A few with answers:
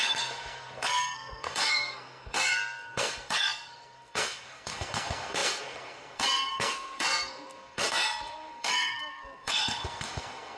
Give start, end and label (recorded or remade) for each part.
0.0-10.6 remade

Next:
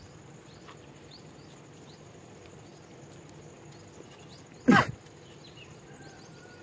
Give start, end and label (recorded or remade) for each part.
0.0-6.6 recorded

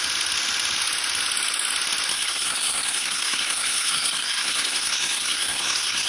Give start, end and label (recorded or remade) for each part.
0.0-2.1 recorded; 2.1-6.1 remade

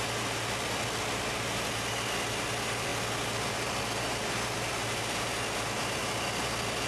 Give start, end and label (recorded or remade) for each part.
0.0-6.9 recorded

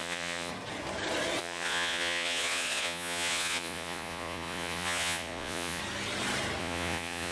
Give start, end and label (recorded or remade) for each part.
0.0-0.5 remade; 0.5-1.4 recorded; 1.4-5.8 remade; 5.8-6.6 recorded; 6.6-7.3 remade